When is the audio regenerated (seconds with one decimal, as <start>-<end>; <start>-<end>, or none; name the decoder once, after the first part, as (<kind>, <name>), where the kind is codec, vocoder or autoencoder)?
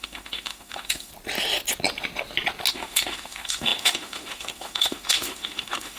0.0-1.1 (autoencoder, DAC-VAE); 2.7-6.0